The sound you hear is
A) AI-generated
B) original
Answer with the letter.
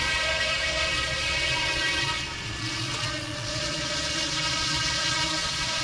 A